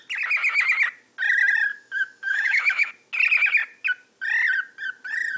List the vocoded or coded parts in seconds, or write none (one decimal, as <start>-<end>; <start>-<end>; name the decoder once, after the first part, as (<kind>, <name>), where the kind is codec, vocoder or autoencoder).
1.7-2.9 (autoencoder, DAC-VAE)